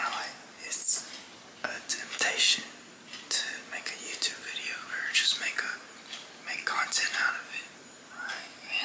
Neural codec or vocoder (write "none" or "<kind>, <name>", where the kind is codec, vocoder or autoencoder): none